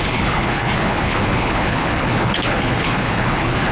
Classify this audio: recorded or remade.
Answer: remade